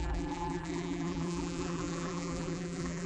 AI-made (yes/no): yes